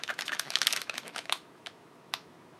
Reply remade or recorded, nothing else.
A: remade